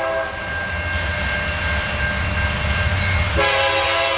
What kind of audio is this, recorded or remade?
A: recorded